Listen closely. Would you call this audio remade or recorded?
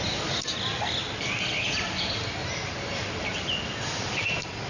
recorded